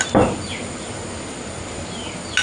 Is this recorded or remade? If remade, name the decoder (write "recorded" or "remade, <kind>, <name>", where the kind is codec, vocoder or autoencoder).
recorded